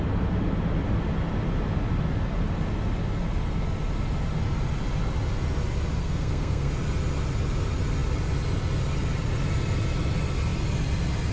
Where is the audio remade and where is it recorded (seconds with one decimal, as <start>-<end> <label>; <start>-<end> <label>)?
0.0-6.0 recorded; 6.0-6.7 remade; 6.7-11.3 recorded